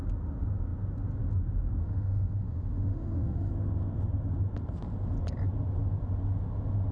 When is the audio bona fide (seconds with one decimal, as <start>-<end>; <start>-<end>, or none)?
0.0-1.8; 3.5-6.9